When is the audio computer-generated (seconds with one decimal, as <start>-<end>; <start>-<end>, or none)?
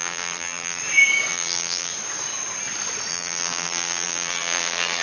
0.0-0.8; 1.3-1.9; 3.1-5.0